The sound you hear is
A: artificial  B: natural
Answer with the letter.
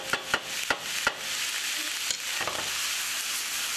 B